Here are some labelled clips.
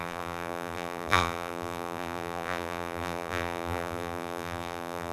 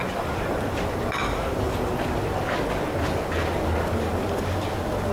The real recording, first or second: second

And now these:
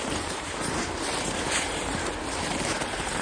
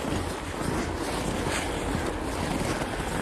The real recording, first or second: second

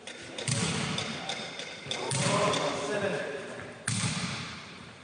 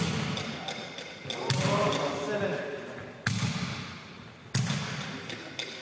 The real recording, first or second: second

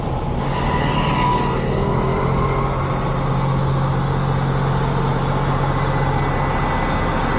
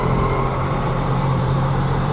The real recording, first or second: first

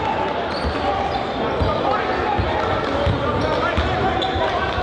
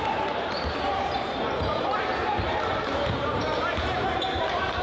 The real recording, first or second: first